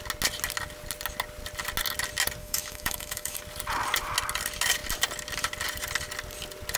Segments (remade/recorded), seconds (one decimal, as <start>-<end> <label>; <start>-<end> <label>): 0.0-2.4 recorded; 2.4-3.4 remade; 3.4-6.8 recorded